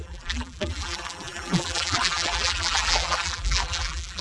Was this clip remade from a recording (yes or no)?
yes